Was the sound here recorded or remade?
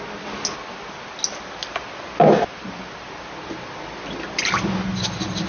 recorded